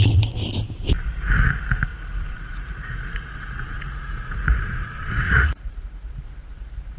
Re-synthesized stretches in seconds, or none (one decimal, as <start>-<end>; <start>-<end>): 1.9-6.1